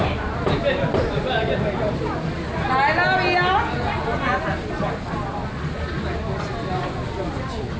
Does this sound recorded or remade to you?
recorded